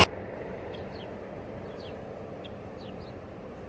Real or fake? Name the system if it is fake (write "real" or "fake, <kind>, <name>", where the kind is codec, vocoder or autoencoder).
fake, vocoder, BigVGAN v2